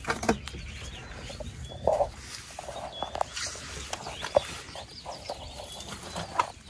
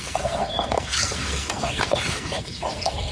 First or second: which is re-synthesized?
second